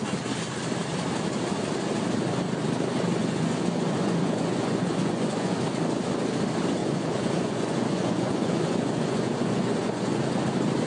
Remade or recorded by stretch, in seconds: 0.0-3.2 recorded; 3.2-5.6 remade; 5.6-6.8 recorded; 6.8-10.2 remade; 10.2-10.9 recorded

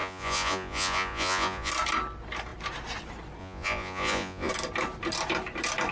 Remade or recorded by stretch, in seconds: 0.0-1.7 remade; 1.7-3.4 recorded; 3.4-4.5 remade; 4.5-5.9 recorded

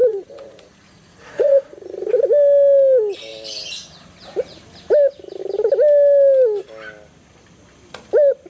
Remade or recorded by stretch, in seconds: 0.0-2.1 remade; 2.1-8.5 recorded

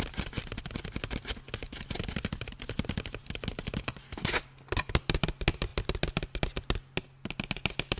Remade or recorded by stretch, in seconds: 0.0-8.0 recorded